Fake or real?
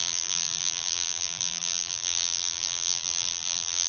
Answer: fake